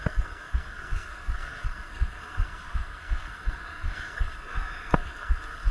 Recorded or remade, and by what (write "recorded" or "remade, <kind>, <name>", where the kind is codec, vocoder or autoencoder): remade, codec, SNAC